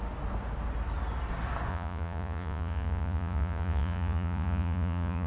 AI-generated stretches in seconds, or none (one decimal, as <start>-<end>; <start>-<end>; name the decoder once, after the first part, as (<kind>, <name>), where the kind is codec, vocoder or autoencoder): 1.7-5.3 (vocoder, Vocos)